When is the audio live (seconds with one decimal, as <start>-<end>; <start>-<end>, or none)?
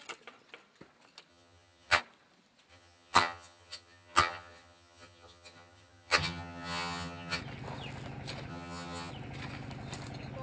0.0-1.3; 2.0-2.7; 7.4-8.5; 9.1-10.4